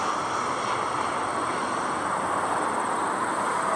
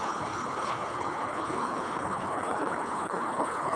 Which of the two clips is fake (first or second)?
second